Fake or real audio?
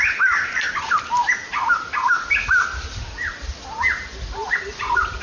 real